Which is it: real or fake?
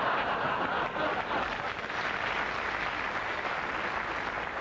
real